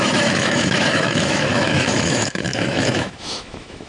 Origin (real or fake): fake